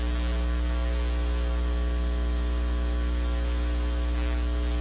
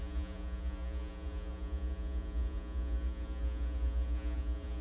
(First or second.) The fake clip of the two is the second